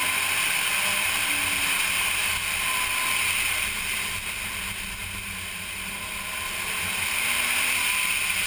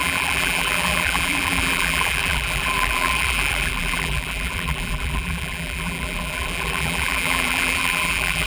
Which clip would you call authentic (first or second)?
first